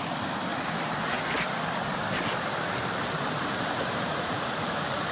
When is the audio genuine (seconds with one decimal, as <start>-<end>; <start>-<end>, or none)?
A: 0.0-4.1